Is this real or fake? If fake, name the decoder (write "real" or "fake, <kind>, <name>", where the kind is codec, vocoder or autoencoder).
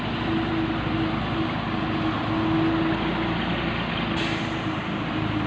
real